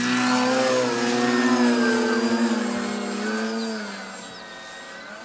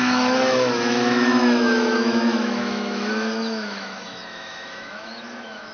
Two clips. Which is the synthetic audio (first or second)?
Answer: second